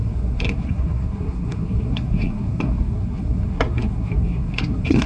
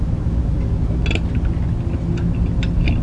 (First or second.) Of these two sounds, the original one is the second